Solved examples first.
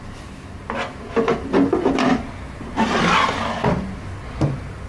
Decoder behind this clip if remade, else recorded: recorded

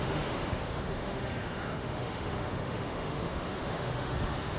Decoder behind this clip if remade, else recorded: remade, autoencoder, DAC-VAE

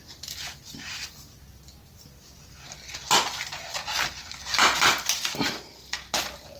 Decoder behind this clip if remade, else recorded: recorded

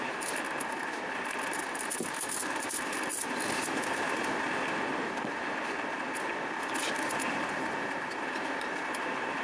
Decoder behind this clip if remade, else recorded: recorded